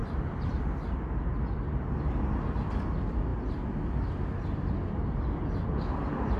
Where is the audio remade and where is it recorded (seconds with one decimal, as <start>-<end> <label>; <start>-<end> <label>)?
0.0-6.4 recorded